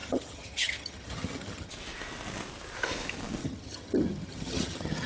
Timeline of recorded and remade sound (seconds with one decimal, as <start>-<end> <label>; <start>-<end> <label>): 0.0-1.7 remade; 1.7-3.4 recorded; 3.4-5.1 remade